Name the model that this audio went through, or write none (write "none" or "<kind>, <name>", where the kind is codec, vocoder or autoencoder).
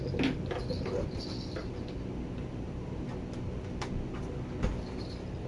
none